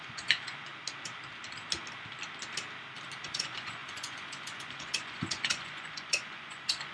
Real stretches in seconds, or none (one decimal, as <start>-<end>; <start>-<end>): 0.7-3.2